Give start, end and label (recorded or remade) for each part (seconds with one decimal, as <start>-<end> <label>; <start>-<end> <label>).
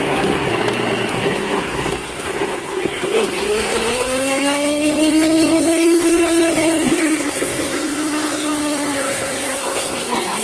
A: 0.0-0.5 remade; 0.5-1.1 recorded; 1.1-10.4 remade